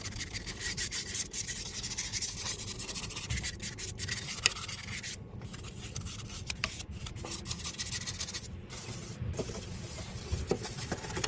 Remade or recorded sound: remade